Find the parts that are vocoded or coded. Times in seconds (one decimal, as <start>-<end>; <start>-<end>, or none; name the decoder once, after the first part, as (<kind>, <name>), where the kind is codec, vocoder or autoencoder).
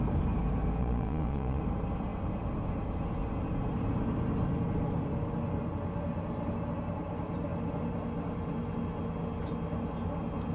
0.8-1.6 (vocoder, Vocos)